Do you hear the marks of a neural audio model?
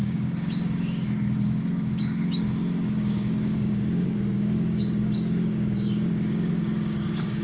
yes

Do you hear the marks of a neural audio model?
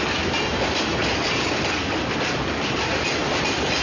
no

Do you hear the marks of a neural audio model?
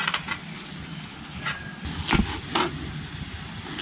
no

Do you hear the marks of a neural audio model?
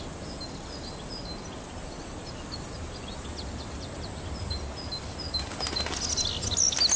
no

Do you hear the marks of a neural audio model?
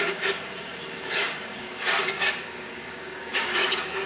yes